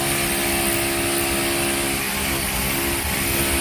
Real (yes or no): yes